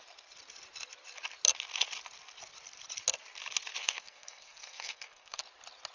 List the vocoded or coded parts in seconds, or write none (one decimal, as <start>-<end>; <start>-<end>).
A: 3.8-5.4